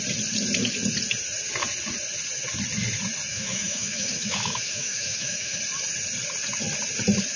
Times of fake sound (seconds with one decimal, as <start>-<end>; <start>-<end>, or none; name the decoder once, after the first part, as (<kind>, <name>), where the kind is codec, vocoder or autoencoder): 3.3-5.6 (autoencoder, DAC-VAE)